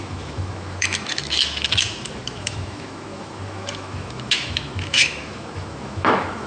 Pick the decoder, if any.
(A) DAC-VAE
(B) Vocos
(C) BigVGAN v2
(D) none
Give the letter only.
A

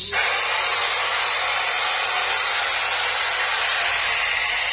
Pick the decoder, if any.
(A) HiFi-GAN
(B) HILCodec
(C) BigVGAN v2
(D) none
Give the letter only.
D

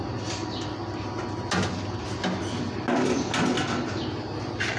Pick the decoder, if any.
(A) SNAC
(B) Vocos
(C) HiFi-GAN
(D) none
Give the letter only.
D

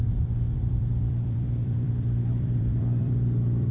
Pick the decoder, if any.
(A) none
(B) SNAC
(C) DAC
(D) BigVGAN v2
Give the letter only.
D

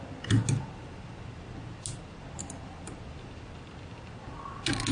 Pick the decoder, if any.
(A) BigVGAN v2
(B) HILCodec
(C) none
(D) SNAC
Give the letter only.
C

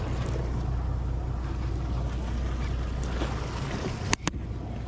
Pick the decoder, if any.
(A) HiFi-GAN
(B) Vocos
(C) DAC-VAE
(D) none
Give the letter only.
D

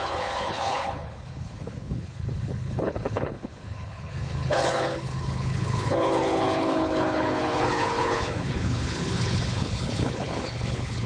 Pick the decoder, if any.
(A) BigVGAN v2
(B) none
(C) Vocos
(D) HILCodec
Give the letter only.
D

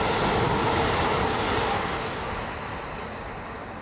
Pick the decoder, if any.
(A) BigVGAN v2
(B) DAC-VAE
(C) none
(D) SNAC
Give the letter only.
A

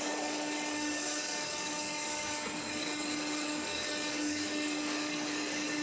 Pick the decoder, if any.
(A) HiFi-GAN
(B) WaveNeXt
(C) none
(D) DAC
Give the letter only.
D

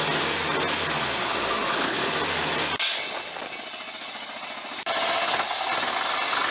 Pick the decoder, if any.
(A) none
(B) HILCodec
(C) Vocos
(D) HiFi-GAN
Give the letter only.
A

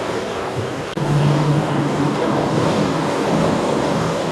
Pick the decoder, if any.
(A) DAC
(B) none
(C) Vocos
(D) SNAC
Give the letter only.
A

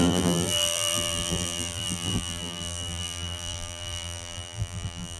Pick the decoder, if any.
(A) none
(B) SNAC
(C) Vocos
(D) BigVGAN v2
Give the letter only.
D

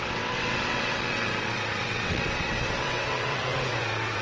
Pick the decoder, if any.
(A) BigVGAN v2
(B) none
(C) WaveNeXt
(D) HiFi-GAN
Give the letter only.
C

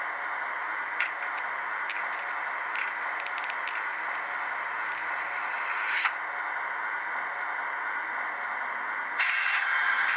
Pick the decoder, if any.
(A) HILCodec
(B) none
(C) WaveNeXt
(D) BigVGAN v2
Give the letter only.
B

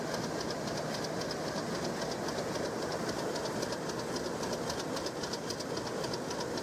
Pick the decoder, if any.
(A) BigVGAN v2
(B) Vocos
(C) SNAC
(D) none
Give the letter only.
D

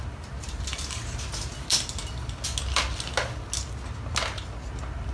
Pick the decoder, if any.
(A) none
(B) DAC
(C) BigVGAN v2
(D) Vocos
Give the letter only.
A